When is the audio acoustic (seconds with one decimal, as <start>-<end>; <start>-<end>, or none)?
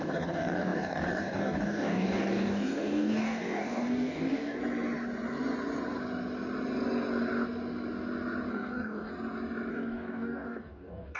4.6-8.5; 9.1-9.7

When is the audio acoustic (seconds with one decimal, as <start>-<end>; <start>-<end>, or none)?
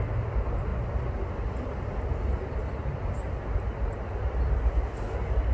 0.0-5.5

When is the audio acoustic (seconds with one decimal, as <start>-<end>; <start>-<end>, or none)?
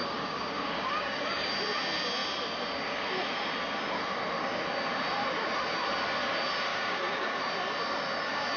1.5-6.7; 7.4-8.6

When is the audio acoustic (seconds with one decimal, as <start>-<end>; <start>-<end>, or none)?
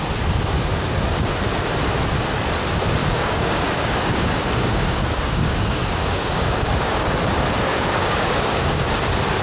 0.0-3.0; 7.1-7.7; 8.9-9.4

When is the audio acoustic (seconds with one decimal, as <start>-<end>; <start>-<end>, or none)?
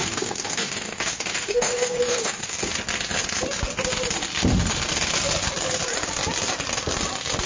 2.5-7.5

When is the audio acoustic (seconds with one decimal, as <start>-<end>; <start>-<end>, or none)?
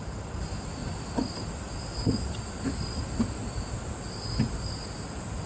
0.0-5.5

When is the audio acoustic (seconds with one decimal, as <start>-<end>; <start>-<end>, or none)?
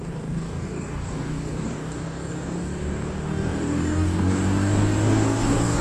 none